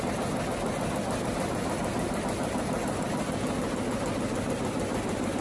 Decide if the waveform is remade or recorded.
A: recorded